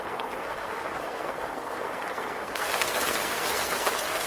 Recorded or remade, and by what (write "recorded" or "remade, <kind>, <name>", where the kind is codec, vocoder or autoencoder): remade, codec, SNAC